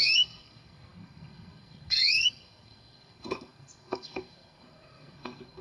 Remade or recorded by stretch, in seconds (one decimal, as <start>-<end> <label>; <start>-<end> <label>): 0.0-5.6 remade